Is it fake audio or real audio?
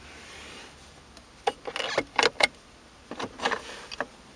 real